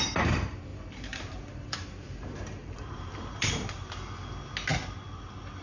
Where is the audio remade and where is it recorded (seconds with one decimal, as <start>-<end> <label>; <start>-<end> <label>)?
0.0-0.7 recorded; 0.7-3.9 remade; 3.9-5.6 recorded